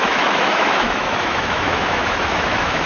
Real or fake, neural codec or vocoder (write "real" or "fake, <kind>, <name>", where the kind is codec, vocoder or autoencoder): fake, autoencoder, DAC-VAE